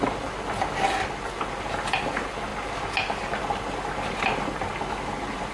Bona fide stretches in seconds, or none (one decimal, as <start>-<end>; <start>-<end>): 0.0-5.5